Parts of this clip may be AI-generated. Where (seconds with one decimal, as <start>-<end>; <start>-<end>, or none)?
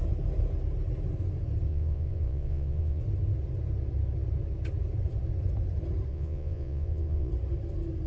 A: 1.7-3.0; 6.1-7.3